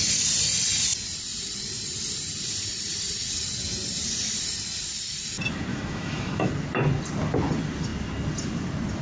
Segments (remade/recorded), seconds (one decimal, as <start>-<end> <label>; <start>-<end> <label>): 0.0-5.7 recorded; 5.7-6.5 remade; 6.5-9.0 recorded